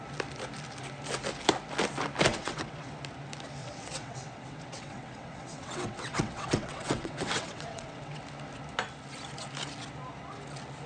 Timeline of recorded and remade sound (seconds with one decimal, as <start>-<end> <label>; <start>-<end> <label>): 0.0-2.3 recorded; 2.3-2.9 remade; 2.9-3.6 recorded; 3.6-8.2 remade; 8.2-10.9 recorded